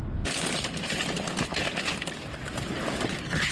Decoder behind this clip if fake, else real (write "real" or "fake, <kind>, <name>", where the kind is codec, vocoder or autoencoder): real